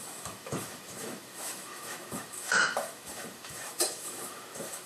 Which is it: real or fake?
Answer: fake